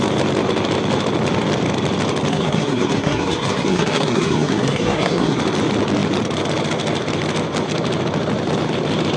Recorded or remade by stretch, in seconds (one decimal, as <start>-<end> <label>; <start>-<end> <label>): 0.0-2.3 recorded; 2.3-5.4 remade; 5.4-9.2 recorded